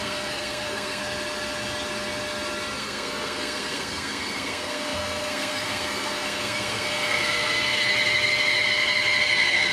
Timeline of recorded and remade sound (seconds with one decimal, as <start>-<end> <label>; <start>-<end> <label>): 0.0-1.0 remade; 1.0-2.8 recorded; 2.8-7.9 remade; 7.9-9.2 recorded; 9.2-9.7 remade